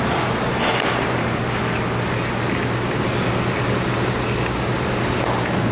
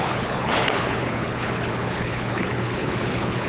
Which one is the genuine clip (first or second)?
first